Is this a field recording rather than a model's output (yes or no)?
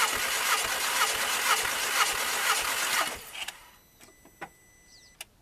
yes